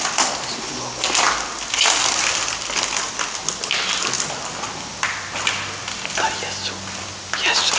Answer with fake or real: real